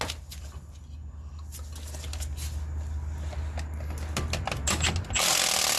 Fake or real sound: real